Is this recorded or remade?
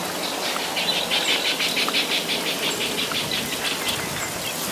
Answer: recorded